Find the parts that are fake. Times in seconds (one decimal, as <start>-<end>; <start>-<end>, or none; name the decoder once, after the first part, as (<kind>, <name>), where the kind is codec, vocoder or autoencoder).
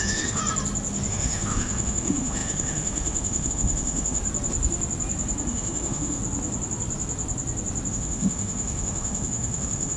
0.0-0.4 (autoencoder, DAC-VAE); 1.1-4.2; 5.5-6.2; 7.9-10.0